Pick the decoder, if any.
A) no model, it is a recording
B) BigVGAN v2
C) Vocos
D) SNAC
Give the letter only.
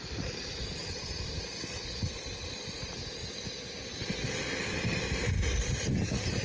A